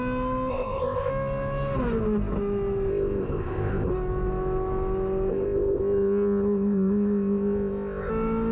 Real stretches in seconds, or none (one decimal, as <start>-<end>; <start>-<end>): 0.0-0.5; 1.1-2.9; 3.9-5.3; 8.1-8.5